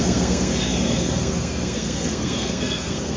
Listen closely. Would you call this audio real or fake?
fake